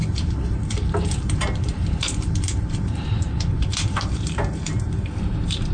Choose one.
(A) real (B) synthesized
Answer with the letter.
B